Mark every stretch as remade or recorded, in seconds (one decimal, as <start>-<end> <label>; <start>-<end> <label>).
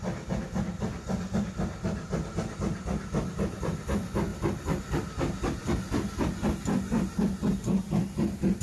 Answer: 0.0-4.3 recorded; 4.3-8.6 remade